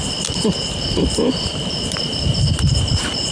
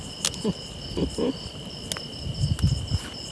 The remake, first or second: first